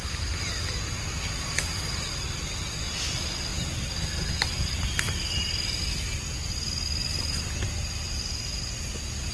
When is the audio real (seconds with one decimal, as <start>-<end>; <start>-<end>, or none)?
0.0-9.3

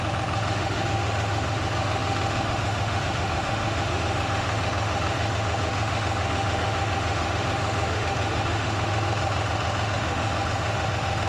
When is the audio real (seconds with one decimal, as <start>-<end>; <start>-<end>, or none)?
none

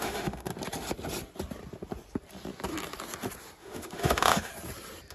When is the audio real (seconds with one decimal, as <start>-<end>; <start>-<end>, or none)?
0.5-3.6; 4.5-5.1

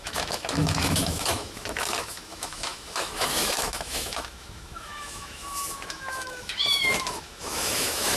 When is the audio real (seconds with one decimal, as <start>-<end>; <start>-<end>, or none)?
none

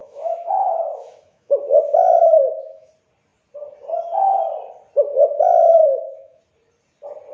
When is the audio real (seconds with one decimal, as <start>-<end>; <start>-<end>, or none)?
1.6-2.2; 2.9-5.8; 6.4-7.3

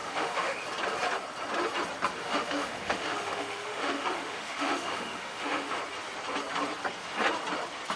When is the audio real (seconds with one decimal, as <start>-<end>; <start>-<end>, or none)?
0.6-2.2; 5.8-8.0

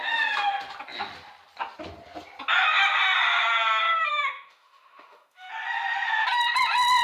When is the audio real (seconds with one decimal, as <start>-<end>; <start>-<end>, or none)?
0.0-4.1; 5.5-7.0

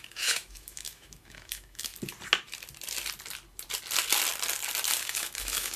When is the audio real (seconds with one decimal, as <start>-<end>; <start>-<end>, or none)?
1.9-5.0